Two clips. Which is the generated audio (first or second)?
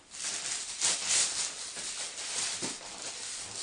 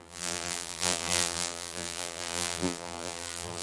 second